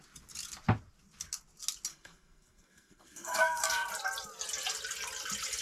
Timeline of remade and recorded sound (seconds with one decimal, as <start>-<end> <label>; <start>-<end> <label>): 0.0-1.9 recorded; 1.9-3.9 remade; 3.9-5.6 recorded